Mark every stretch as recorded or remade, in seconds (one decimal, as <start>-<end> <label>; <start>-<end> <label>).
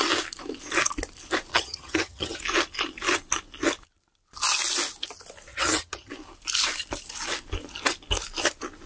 0.0-1.5 recorded; 1.5-2.4 remade; 2.4-5.5 recorded; 5.5-6.1 remade; 6.1-8.9 recorded